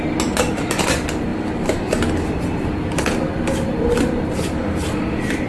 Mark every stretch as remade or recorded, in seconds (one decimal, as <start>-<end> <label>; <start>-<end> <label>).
0.0-5.5 recorded